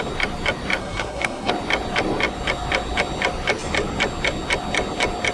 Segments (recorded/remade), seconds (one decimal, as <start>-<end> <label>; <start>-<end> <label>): 0.0-0.8 recorded; 0.8-1.5 remade; 1.5-5.3 recorded